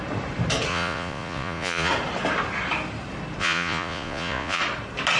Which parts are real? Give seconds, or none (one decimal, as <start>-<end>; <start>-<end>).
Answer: 0.0-0.7; 1.9-3.4; 4.6-5.2